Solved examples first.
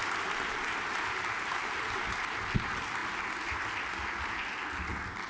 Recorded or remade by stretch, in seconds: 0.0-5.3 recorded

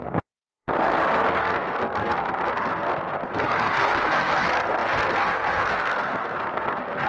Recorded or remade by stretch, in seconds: 0.0-7.1 remade

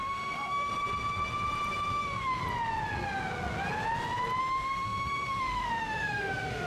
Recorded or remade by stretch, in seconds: 0.0-0.7 remade; 0.7-1.9 recorded; 1.9-2.4 remade; 2.4-4.4 recorded; 4.4-6.7 remade

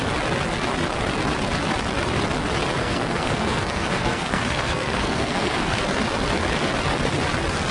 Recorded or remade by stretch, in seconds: 0.0-2.8 recorded; 2.8-5.8 remade; 5.8-7.7 recorded